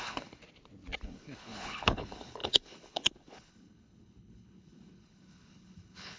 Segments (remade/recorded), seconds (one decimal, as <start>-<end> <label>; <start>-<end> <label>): 0.0-0.4 remade; 0.4-1.0 recorded; 1.0-6.2 remade